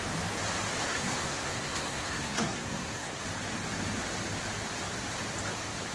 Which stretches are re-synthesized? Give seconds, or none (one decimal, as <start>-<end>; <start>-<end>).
0.9-3.2